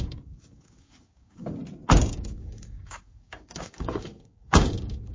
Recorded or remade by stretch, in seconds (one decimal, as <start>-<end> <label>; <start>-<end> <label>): 0.0-1.6 remade; 1.6-2.1 recorded; 2.1-5.1 remade